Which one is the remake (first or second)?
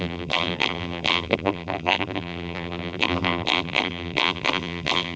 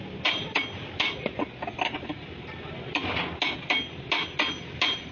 first